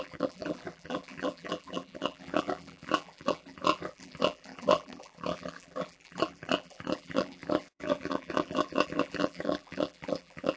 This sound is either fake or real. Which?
fake